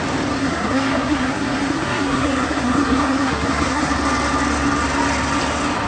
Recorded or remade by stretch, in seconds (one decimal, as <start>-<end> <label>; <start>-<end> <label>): 0.0-0.4 recorded; 0.4-3.9 remade; 3.9-5.9 recorded